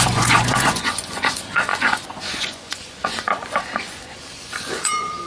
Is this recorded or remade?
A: remade